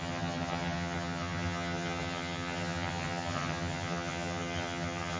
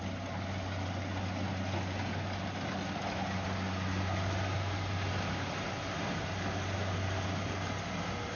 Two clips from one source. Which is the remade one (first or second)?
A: first